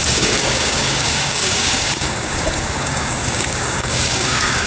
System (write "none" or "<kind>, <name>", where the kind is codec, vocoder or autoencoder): codec, DAC